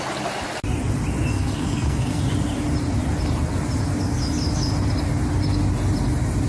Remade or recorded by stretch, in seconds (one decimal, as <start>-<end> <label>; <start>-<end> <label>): 0.0-1.3 recorded; 1.3-2.2 remade; 2.2-6.5 recorded